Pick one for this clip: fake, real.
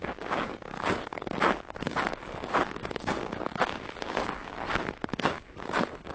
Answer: fake